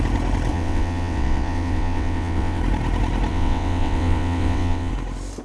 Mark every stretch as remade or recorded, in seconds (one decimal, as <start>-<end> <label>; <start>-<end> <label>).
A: 0.0-0.5 recorded; 0.5-2.6 remade; 2.6-3.3 recorded; 3.3-4.9 remade; 4.9-5.4 recorded